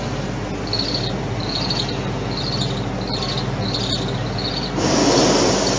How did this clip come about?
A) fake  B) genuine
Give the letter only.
B